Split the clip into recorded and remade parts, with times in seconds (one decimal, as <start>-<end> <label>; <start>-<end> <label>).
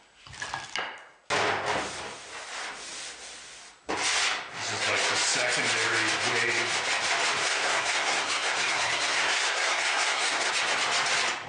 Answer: 0.0-7.4 recorded; 7.4-10.5 remade; 10.5-11.5 recorded